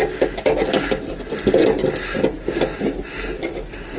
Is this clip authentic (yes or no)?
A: yes